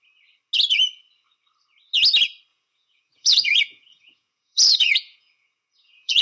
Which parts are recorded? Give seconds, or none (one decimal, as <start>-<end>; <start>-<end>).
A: 0.0-2.5